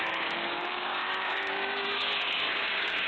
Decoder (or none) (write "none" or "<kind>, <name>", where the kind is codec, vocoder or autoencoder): codec, DAC